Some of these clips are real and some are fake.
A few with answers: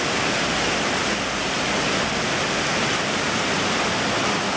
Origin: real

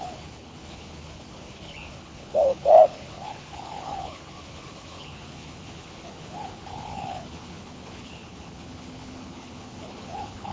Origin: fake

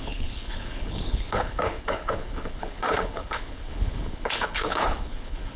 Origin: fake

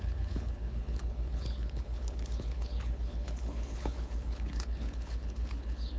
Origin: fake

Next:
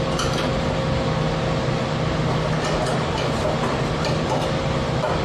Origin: real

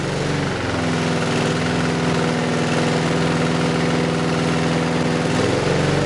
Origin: real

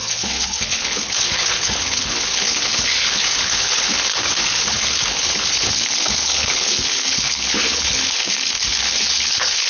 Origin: fake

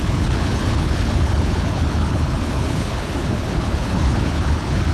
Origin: fake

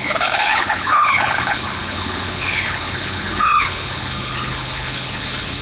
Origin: fake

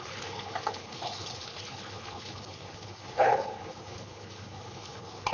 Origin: fake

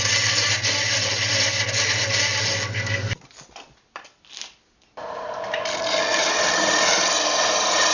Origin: real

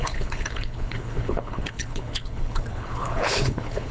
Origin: fake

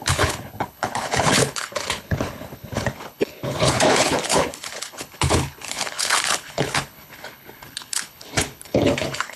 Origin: fake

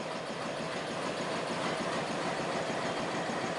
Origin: real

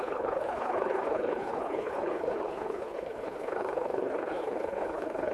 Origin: fake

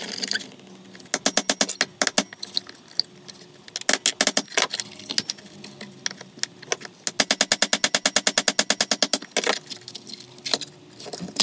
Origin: real